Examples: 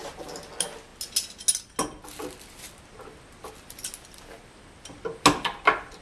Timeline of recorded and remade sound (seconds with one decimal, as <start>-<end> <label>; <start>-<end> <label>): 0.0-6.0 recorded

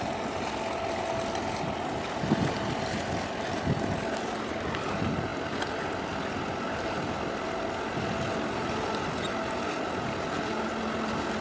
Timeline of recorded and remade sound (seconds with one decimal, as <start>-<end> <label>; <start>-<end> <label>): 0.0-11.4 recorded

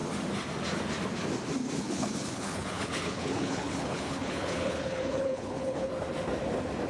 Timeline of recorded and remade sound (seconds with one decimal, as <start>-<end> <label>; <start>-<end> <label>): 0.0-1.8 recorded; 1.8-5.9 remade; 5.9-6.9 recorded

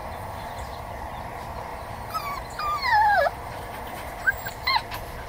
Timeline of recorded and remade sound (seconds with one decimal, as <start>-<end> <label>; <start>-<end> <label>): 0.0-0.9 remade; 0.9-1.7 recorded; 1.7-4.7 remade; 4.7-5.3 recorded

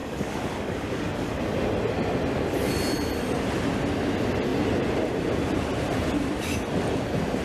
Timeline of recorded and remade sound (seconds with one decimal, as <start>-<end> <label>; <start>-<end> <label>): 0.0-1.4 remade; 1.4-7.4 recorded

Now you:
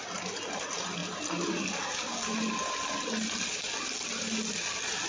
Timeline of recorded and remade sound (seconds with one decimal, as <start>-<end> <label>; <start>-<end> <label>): 0.0-5.1 recorded